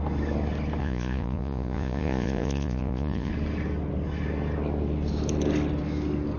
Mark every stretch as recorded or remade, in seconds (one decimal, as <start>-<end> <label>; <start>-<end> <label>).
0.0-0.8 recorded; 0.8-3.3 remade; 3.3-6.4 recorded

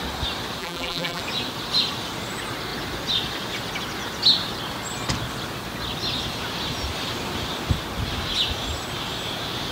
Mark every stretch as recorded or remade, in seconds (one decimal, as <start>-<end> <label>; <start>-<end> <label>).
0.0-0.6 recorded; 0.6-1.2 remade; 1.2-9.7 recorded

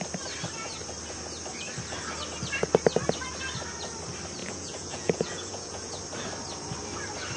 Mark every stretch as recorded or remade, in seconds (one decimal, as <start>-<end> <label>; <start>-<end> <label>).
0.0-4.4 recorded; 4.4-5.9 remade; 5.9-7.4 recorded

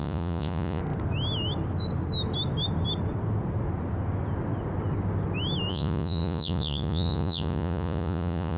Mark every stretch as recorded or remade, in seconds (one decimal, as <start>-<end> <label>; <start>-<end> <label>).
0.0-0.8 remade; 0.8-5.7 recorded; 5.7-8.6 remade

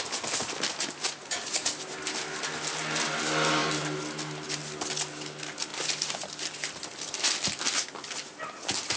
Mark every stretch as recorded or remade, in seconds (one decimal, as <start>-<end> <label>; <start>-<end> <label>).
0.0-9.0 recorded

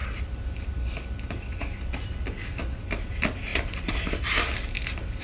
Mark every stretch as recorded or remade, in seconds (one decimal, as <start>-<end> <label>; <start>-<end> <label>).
0.0-5.2 recorded

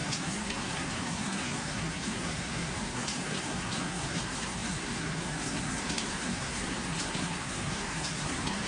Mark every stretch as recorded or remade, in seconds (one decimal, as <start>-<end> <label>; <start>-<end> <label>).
0.0-8.7 remade

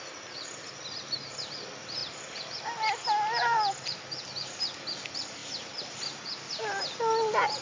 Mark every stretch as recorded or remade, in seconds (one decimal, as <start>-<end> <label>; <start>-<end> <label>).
0.0-2.0 recorded; 2.0-3.7 remade; 3.7-7.6 recorded